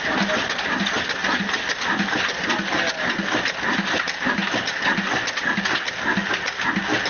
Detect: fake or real real